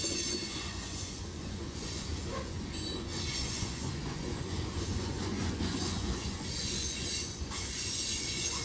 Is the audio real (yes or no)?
no